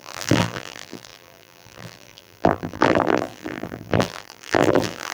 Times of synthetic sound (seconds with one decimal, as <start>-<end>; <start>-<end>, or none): 0.0-5.1